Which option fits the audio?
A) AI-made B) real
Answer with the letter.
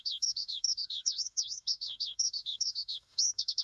A